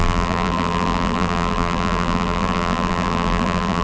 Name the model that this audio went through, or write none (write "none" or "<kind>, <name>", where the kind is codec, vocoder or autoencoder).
vocoder, BigVGAN v2